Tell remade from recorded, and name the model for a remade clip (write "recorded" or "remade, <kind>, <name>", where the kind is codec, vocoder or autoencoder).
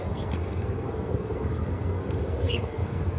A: remade, codec, SNAC